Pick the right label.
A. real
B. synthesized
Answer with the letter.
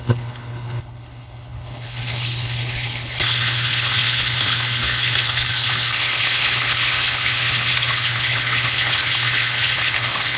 B